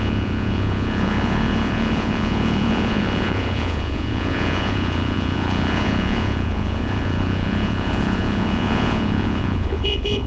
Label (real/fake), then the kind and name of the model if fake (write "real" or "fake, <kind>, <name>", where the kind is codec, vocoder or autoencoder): fake, vocoder, Vocos